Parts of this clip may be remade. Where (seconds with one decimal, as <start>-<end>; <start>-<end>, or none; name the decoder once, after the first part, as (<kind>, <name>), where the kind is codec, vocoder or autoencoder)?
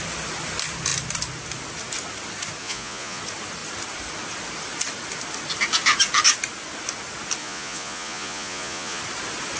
2.6-3.2 (vocoder, Vocos); 7.4-9.0